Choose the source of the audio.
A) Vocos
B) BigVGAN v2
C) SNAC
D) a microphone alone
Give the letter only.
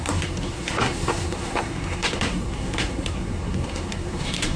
C